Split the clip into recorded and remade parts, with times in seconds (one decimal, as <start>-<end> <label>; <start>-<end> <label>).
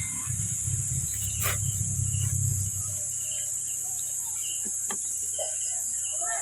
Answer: 0.0-6.4 recorded